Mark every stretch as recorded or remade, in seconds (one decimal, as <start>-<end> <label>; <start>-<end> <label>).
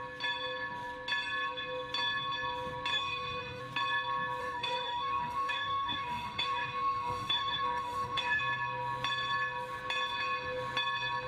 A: 0.0-2.9 recorded; 2.9-3.6 remade; 3.6-4.4 recorded; 4.4-8.4 remade; 8.4-11.3 recorded